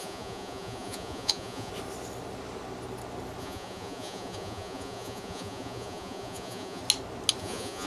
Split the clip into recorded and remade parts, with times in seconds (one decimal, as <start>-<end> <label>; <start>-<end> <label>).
0.0-1.7 remade; 1.7-3.4 recorded; 3.4-6.8 remade; 6.8-7.4 recorded; 7.4-7.9 remade